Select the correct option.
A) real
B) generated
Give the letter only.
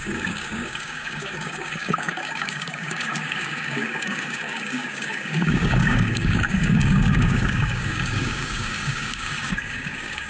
B